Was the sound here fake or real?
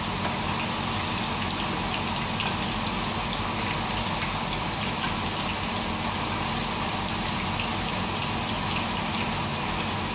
real